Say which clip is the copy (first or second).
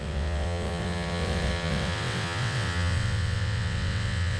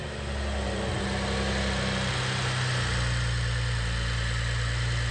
first